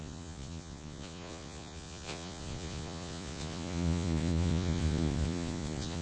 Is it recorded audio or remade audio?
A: remade